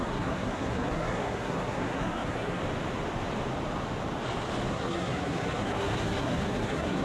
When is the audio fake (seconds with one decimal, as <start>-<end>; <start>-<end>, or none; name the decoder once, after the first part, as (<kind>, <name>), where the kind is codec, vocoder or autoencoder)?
0.0-2.6 (codec, SNAC); 4.7-7.0